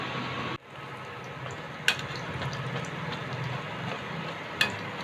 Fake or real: real